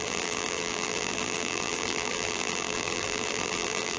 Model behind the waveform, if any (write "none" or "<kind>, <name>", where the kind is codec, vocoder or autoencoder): vocoder, BigVGAN v2